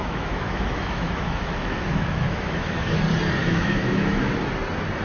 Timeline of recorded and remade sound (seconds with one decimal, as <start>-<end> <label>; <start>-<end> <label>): 0.0-3.0 remade; 3.0-3.4 recorded; 3.4-4.3 remade; 4.3-5.0 recorded